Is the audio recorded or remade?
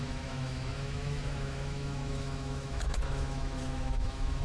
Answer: remade